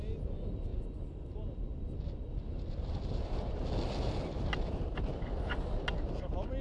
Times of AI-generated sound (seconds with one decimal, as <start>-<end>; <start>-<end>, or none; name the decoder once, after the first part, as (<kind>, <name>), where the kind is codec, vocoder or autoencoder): none